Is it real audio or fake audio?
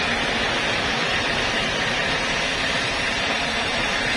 real